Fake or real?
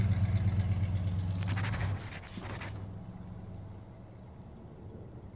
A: real